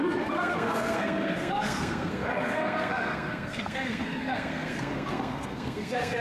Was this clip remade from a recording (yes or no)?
yes